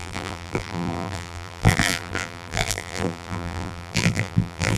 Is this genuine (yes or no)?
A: no